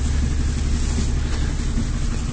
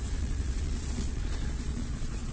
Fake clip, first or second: second